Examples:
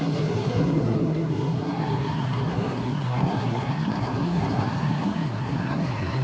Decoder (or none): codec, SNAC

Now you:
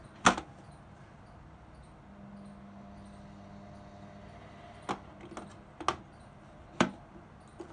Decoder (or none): none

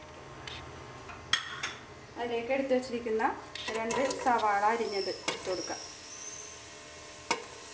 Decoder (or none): none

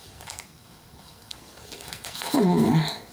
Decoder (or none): codec, SNAC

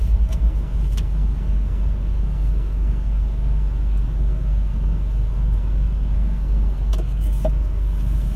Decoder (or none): codec, SNAC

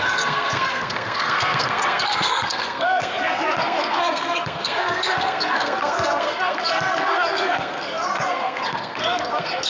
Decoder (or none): codec, SNAC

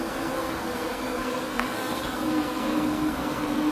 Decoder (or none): codec, SNAC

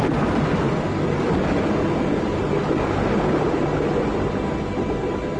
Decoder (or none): none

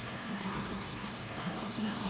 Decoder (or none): codec, SNAC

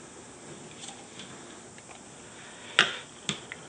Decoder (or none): none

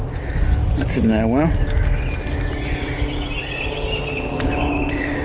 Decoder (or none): none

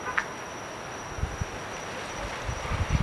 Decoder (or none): none